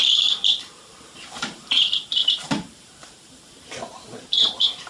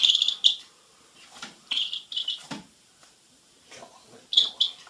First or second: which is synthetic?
first